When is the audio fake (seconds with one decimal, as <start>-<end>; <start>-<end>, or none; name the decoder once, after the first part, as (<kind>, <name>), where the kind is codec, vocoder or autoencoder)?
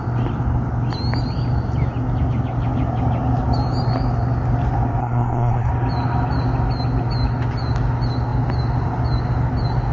5.0-5.7 (codec, SNAC)